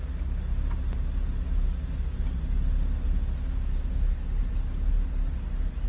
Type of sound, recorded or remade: recorded